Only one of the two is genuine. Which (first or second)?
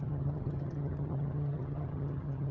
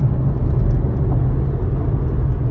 second